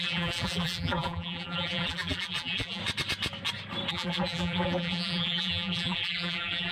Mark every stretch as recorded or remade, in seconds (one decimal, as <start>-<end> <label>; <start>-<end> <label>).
0.0-2.8 remade; 2.8-3.9 recorded; 3.9-6.7 remade